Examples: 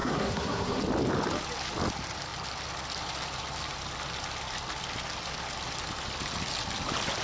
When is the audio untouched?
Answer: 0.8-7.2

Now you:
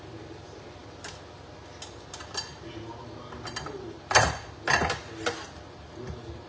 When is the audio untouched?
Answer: 0.0-6.5

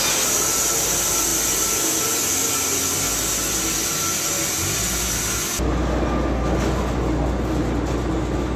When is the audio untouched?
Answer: 0.0-8.6

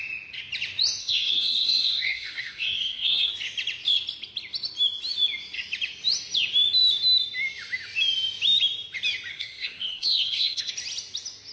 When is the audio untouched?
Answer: 0.0-1.0; 3.3-9.3; 10.7-11.5